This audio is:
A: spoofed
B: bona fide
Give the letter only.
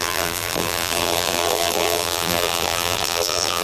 A